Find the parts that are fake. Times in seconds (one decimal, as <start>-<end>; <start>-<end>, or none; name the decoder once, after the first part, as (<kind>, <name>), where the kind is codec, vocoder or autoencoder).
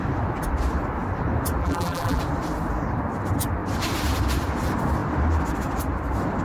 1.6-2.2 (vocoder, BigVGAN v2)